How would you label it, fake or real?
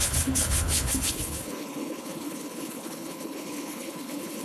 fake